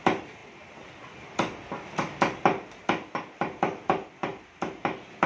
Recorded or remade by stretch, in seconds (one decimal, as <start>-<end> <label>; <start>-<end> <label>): 0.0-5.3 recorded

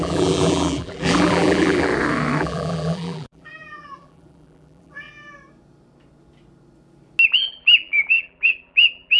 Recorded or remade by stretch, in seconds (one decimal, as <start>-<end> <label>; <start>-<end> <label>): 0.0-1.9 remade; 1.9-2.4 recorded; 2.4-5.1 remade; 5.1-7.3 recorded; 7.3-9.2 remade

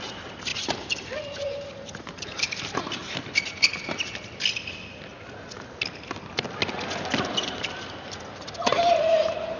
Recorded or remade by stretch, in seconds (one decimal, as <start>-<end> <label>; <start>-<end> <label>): 0.0-3.0 remade; 3.0-7.6 recorded; 7.6-9.6 remade

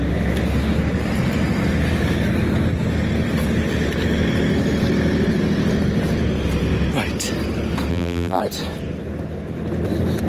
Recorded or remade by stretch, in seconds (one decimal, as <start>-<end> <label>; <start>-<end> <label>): 0.0-7.9 recorded; 7.9-8.4 remade; 8.4-10.3 recorded

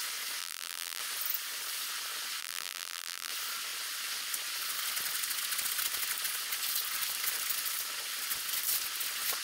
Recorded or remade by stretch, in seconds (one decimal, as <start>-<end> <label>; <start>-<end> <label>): 0.0-0.4 recorded; 0.4-1.0 remade; 1.0-2.4 recorded; 2.4-3.3 remade; 3.3-9.4 recorded

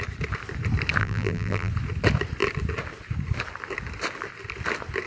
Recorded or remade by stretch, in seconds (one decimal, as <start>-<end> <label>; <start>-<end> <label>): 0.0-1.0 recorded; 1.0-1.7 remade; 1.7-5.1 recorded